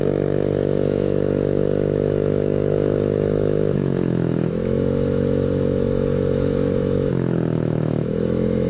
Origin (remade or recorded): remade